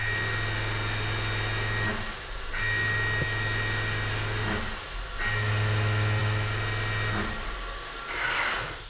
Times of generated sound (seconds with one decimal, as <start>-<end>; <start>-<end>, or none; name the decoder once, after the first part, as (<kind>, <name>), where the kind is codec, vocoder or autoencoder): none